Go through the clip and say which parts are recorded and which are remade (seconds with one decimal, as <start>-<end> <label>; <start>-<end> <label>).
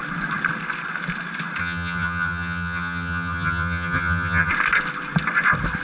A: 0.0-1.6 recorded; 1.6-4.5 remade; 4.5-5.8 recorded